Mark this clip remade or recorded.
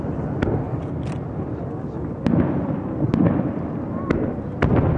recorded